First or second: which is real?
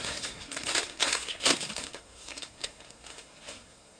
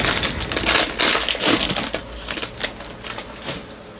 second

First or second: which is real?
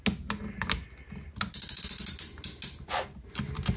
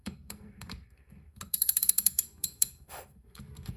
first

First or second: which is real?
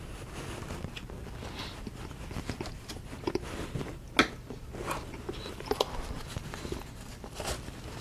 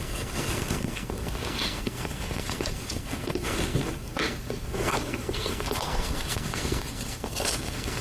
first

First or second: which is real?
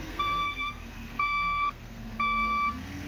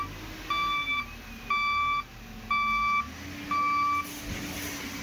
second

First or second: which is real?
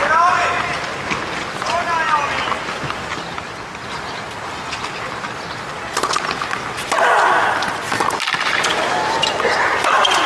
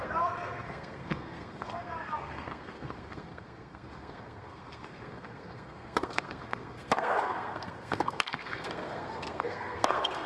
first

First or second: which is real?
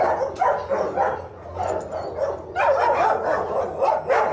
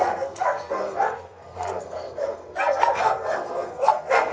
first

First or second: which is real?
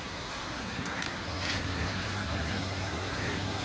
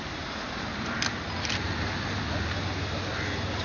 second